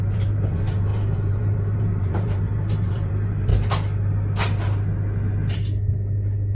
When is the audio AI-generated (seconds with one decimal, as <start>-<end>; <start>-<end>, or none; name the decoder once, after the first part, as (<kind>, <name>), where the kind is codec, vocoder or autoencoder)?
0.0-3.5 (vocoder, BigVGAN v2)